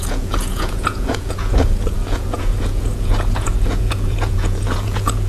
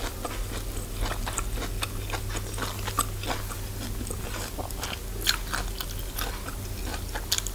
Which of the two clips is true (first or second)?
second